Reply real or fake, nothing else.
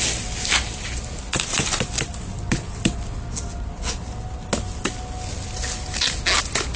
real